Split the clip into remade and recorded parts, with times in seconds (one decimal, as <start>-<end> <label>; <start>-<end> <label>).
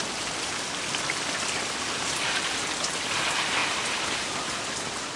0.0-5.2 recorded